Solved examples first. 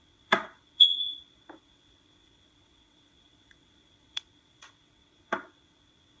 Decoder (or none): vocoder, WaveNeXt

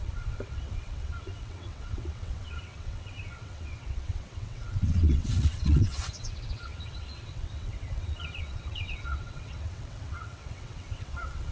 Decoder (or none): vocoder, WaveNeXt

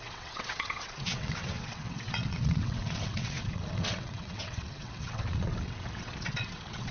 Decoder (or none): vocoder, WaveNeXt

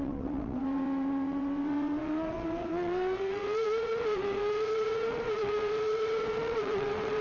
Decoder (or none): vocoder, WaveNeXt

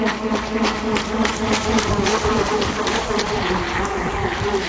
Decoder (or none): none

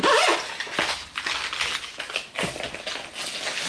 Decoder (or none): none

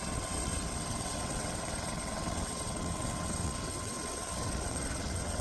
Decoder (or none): vocoder, WaveNeXt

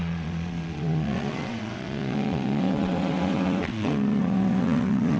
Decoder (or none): vocoder, WaveNeXt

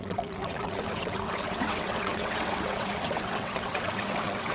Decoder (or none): vocoder, WaveNeXt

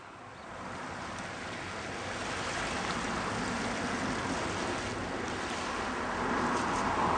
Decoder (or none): none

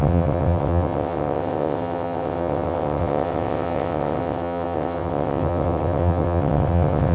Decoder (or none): vocoder, WaveNeXt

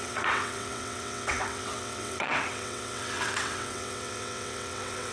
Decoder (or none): vocoder, WaveNeXt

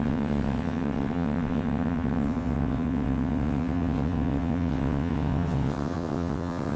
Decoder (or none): vocoder, WaveNeXt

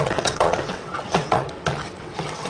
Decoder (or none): vocoder, WaveNeXt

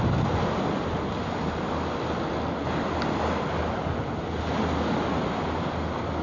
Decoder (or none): none